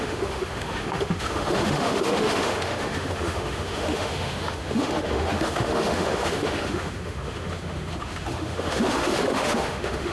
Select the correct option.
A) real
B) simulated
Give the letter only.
B